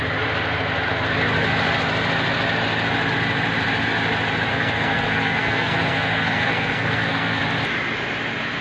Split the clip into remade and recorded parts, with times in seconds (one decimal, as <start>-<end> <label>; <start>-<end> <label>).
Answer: 0.0-4.5 recorded; 4.5-7.4 remade; 7.4-8.6 recorded